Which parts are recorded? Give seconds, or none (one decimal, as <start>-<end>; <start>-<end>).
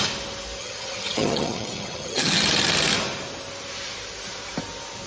0.0-0.6; 2.4-5.1